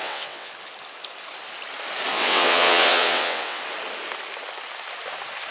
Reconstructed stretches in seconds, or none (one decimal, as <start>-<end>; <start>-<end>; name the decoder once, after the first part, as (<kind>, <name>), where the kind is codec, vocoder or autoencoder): 0.0-0.5 (vocoder, WaveNeXt); 2.1-3.6